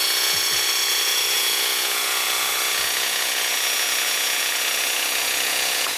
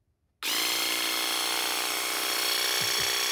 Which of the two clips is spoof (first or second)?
first